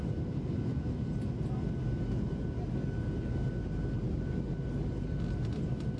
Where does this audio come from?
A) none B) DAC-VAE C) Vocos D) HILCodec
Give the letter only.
A